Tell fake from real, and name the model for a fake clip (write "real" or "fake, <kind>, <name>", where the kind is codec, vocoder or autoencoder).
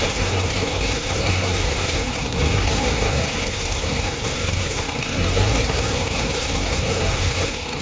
fake, codec, SNAC